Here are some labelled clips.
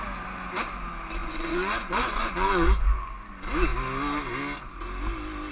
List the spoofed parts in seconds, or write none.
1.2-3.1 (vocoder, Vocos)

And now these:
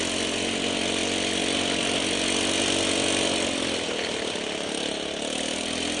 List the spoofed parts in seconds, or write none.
none

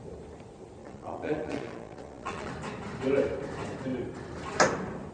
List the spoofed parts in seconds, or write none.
0.8-2.5 (vocoder, Vocos)

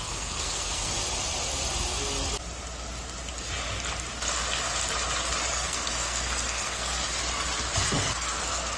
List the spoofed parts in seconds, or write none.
0.0-1.0 (codec, SNAC); 5.5-7.0; 7.9-8.8

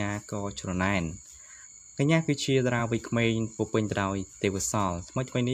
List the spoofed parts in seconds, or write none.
none

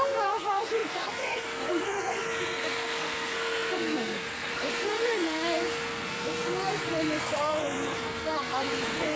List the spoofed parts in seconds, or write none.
0.0-9.2 (codec, SNAC)

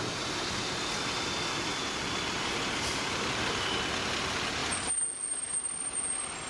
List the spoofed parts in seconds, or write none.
none

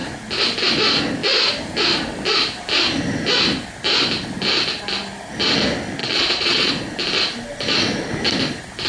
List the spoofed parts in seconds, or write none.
6.0-6.7 (vocoder, Vocos)